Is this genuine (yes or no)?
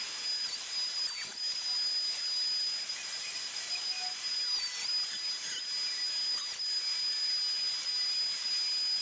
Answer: yes